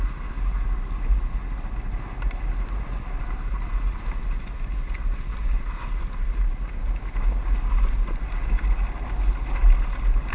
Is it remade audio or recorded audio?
recorded